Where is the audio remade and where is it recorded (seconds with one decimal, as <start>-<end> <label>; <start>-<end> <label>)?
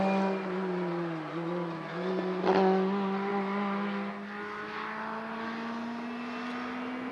0.0-7.1 recorded